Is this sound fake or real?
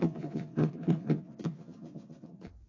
fake